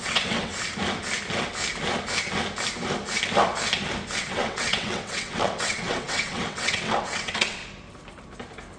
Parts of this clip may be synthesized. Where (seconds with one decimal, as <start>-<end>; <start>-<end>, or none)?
0.0-0.5; 4.2-7.6